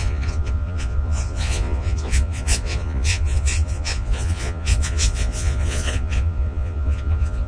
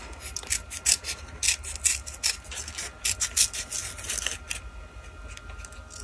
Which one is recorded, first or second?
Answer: second